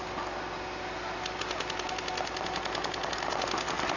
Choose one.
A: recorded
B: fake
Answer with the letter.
A